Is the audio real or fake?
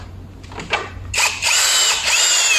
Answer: real